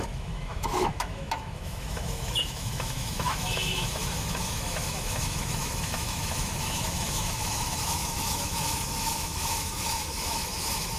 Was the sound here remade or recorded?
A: remade